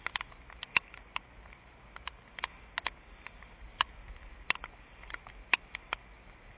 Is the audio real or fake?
real